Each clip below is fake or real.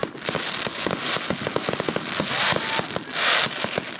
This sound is real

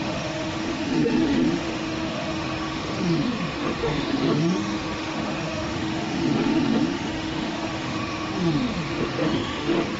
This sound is fake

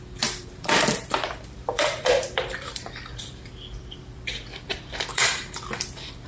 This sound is fake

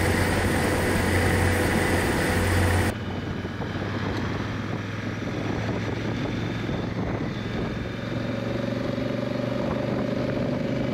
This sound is real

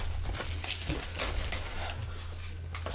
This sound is real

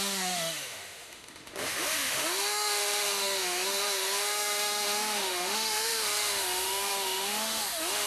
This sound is fake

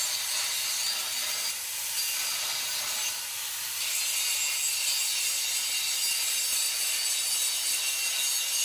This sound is real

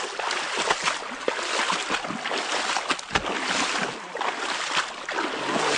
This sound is real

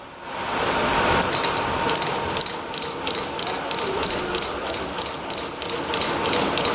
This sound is real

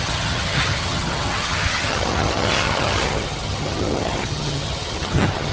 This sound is fake